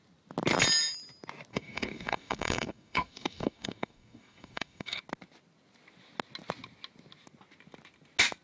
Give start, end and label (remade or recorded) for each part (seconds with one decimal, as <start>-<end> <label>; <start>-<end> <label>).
0.0-1.5 recorded; 1.5-5.0 remade; 5.0-8.4 recorded